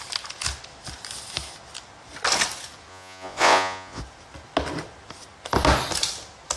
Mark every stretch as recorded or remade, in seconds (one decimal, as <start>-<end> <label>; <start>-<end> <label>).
0.0-2.9 recorded; 2.9-4.0 remade; 4.0-6.6 recorded